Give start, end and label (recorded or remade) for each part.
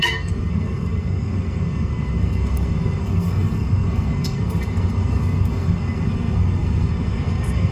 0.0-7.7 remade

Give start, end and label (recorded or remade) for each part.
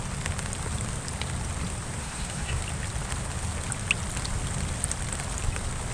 0.0-2.0 recorded; 2.0-2.6 remade; 2.6-5.9 recorded